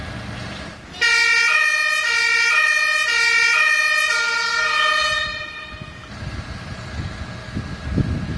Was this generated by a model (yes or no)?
no